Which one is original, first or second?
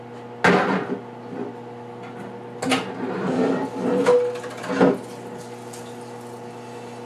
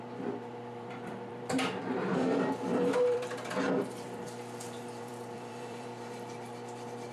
first